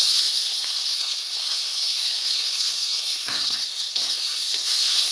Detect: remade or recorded remade